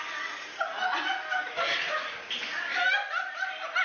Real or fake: real